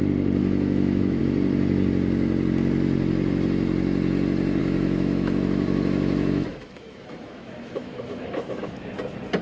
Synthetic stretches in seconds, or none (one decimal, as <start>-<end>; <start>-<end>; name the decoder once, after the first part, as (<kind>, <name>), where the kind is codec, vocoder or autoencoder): 0.4-1.2 (autoencoder, DAC-VAE); 4.6-8.7